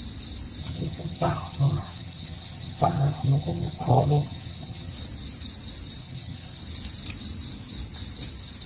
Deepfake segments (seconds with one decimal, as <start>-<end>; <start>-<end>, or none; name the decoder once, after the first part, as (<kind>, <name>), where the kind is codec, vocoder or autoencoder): 0.6-4.9 (vocoder, HiFi-GAN); 6.0-6.6

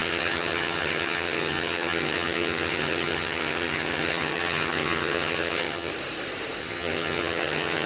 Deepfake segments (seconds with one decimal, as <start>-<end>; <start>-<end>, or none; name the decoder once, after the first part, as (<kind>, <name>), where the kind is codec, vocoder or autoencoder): 0.0-5.9 (vocoder, HiFi-GAN); 6.6-7.9

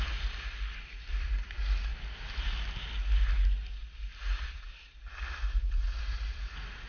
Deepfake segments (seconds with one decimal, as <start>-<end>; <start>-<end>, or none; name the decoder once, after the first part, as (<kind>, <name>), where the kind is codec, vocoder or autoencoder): none

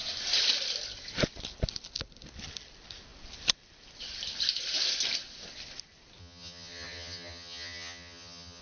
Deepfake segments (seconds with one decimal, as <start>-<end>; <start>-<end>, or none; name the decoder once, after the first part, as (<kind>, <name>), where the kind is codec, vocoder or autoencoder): 6.2-8.6 (vocoder, HiFi-GAN)

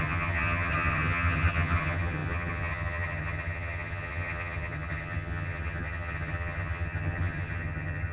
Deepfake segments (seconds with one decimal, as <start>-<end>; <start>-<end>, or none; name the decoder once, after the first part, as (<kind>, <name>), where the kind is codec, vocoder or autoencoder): 0.0-8.1 (vocoder, HiFi-GAN)